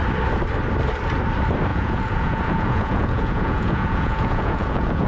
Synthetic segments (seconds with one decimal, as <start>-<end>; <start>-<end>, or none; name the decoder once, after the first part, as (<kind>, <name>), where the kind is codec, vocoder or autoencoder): 1.7-5.1 (vocoder, Vocos)